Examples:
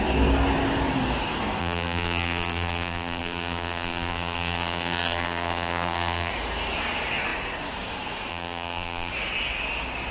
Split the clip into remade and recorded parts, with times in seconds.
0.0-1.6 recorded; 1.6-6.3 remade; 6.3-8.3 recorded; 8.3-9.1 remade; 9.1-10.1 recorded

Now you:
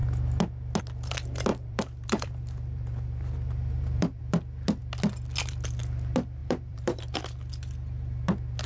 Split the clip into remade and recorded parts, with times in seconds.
0.0-1.5 recorded; 1.5-4.2 remade; 4.2-6.4 recorded; 6.4-7.0 remade; 7.0-8.7 recorded